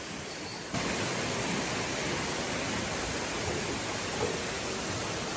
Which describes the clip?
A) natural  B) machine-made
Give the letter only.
A